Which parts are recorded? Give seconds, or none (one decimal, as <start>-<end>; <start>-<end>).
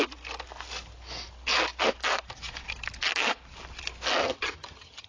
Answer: 0.0-4.2